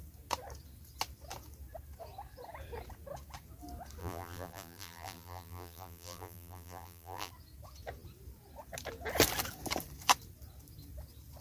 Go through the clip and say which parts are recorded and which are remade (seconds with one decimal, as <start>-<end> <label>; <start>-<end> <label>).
0.0-4.0 recorded; 4.0-7.3 remade; 7.3-11.4 recorded